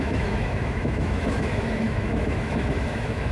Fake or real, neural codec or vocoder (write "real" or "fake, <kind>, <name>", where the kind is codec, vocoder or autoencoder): fake, autoencoder, DAC-VAE